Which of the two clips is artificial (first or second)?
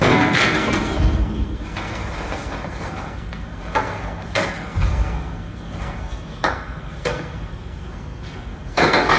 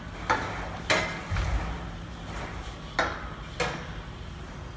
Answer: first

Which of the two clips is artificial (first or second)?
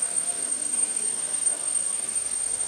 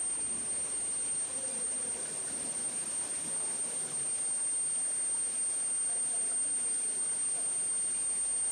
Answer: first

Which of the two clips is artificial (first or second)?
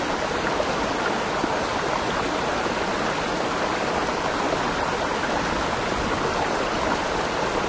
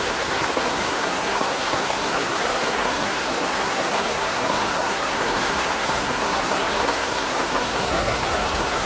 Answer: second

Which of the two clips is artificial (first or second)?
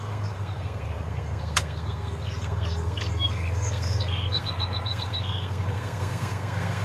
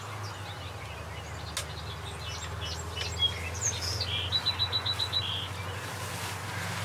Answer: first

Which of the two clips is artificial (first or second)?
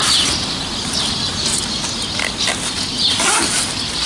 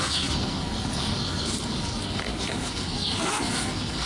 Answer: second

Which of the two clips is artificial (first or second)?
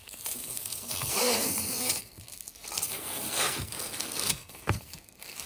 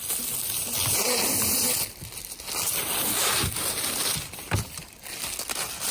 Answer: first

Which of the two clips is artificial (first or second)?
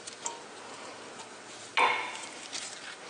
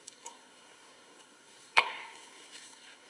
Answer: second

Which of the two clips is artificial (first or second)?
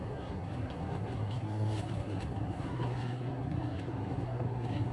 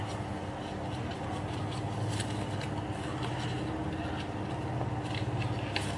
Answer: first